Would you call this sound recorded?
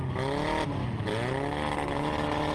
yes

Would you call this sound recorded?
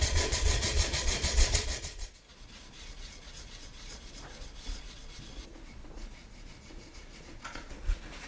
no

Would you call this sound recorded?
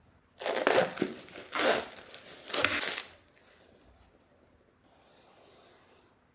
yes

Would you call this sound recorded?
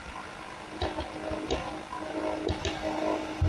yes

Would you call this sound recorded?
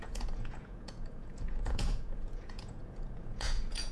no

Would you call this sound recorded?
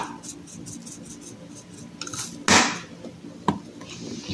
yes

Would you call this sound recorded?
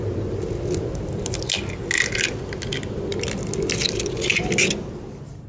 yes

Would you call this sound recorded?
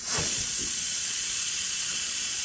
no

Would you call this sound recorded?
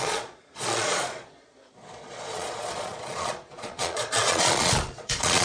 no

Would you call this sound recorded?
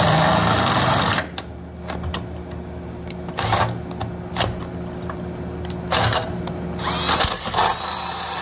yes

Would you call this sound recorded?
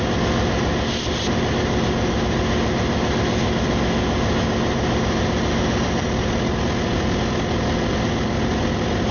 yes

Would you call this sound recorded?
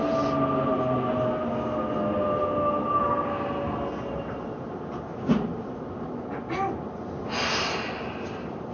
yes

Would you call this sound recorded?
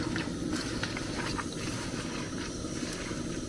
yes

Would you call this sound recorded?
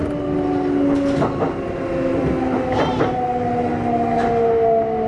yes